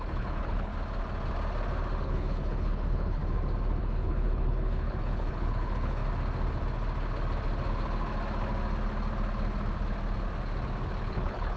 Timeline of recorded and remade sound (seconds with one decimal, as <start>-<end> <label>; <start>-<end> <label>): 0.0-0.7 remade; 0.7-2.0 recorded; 2.0-3.2 remade; 3.2-3.8 recorded; 3.8-6.0 remade; 6.0-11.0 recorded; 11.0-11.6 remade